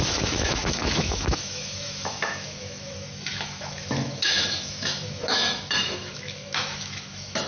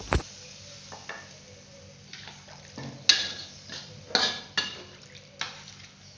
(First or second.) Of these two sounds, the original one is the second